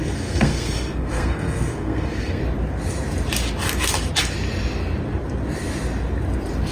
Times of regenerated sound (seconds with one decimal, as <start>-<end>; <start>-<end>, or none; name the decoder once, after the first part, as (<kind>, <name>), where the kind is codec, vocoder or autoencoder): 0.0-2.4 (codec, SNAC)